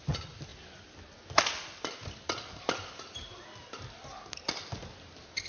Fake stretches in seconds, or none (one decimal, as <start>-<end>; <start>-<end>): none